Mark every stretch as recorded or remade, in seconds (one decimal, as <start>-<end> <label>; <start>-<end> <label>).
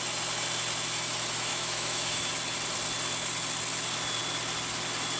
0.0-1.5 recorded; 1.5-2.3 remade; 2.3-5.2 recorded